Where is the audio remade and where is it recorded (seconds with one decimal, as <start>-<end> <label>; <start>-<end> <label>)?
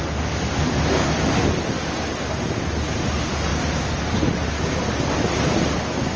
0.0-6.2 recorded